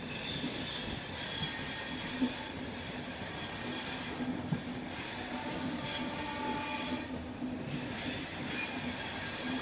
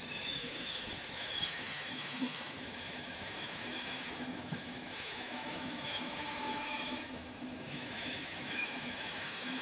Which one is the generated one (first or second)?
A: second